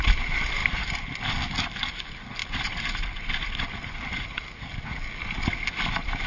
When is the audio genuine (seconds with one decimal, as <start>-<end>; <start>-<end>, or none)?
0.0-6.3

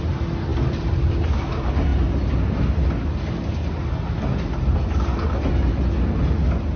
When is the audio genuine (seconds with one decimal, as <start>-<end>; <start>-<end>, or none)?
0.0-6.8